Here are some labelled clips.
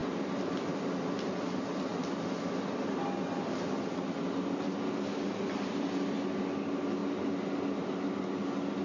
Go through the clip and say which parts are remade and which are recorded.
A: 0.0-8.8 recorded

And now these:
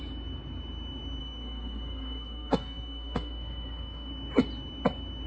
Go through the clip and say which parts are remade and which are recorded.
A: 0.0-1.2 recorded; 1.2-4.1 remade; 4.1-5.3 recorded

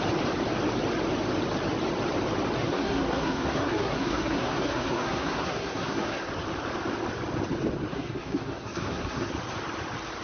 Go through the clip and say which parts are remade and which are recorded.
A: 0.0-2.6 recorded; 2.6-6.3 remade; 6.3-7.9 recorded; 7.9-9.3 remade; 9.3-10.2 recorded

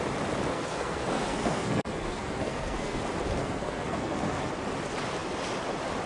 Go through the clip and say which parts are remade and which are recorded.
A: 0.0-0.5 recorded; 0.5-3.0 remade; 3.0-3.4 recorded; 3.4-4.4 remade; 4.4-6.1 recorded

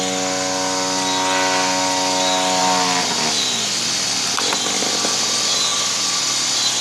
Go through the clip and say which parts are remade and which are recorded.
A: 0.0-6.8 recorded

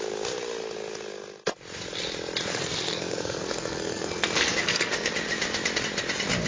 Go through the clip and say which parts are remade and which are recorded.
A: 0.0-2.5 recorded; 2.5-5.1 remade; 5.1-6.5 recorded

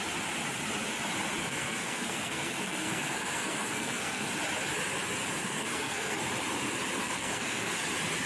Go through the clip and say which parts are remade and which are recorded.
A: 0.0-1.4 recorded; 1.4-4.3 remade; 4.3-5.4 recorded; 5.4-6.2 remade; 6.2-7.0 recorded; 7.0-7.7 remade; 7.7-8.3 recorded

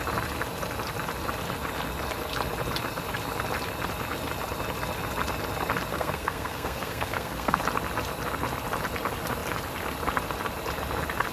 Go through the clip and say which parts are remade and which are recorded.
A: 0.0-5.9 recorded; 5.9-7.6 remade; 7.6-11.3 recorded